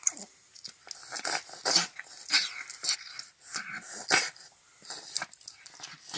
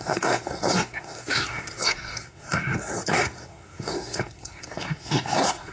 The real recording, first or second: first